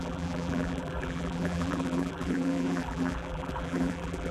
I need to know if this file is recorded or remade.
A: remade